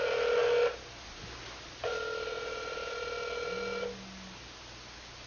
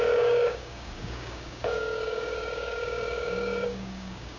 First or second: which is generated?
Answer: second